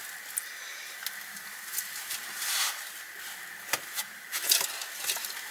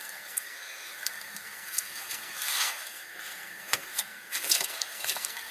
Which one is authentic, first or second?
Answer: first